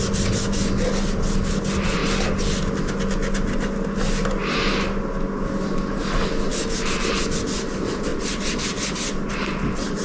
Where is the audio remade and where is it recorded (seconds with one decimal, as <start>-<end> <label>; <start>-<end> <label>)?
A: 0.0-10.0 recorded